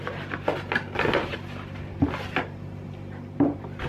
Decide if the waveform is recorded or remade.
recorded